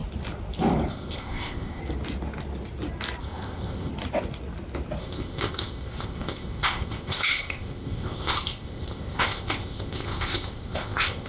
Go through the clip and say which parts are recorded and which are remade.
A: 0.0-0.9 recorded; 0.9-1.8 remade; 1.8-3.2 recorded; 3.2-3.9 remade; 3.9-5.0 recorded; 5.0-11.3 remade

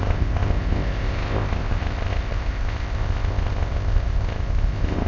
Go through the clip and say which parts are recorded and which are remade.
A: 0.0-5.1 remade

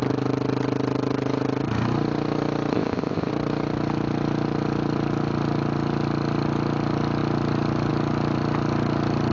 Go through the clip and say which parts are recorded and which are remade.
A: 0.0-2.7 recorded; 2.7-3.3 remade; 3.3-9.3 recorded

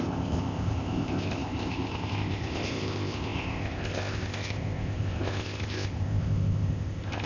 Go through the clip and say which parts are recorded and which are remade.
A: 0.0-7.3 remade

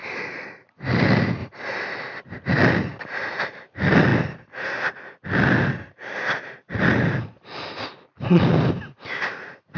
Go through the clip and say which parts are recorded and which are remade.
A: 0.0-9.8 recorded

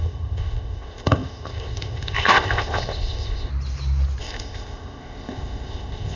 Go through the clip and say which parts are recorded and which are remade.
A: 0.0-3.5 remade; 3.5-4.2 recorded; 4.2-6.2 remade